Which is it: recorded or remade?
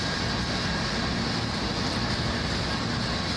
recorded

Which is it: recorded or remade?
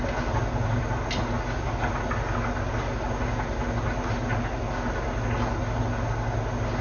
recorded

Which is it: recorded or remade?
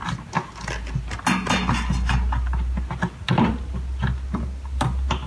recorded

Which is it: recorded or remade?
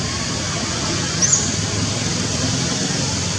recorded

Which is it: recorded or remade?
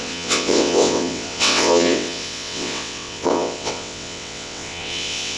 remade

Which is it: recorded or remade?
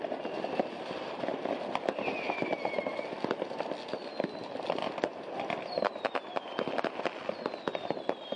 recorded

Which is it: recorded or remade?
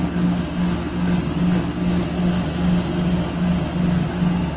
recorded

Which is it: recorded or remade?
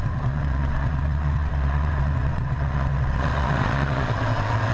remade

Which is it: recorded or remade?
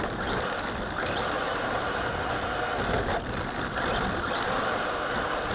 recorded